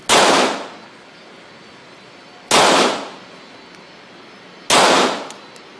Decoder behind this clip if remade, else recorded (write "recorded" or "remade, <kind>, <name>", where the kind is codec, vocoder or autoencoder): recorded